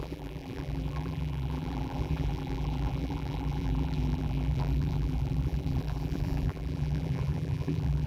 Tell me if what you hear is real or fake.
fake